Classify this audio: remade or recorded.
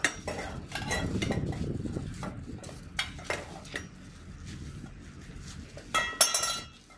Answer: recorded